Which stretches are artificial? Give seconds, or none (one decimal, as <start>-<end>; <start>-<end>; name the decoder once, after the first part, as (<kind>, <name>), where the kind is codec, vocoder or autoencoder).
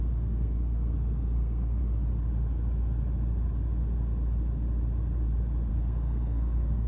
0.0-1.8 (codec, SNAC); 5.7-6.9